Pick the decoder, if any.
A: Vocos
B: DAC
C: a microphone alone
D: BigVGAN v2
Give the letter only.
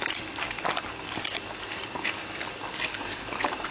C